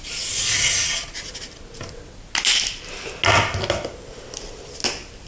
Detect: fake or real real